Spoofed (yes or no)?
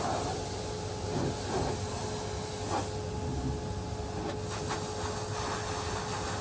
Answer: no